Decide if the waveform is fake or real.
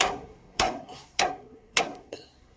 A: fake